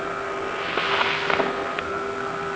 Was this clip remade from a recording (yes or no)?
yes